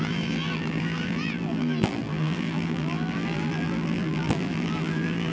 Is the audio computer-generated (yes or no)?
yes